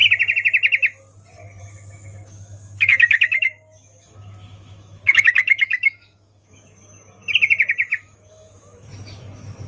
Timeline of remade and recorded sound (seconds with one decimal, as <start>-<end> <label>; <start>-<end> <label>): 0.0-1.6 recorded; 1.6-7.2 remade; 7.2-7.7 recorded; 7.7-9.7 remade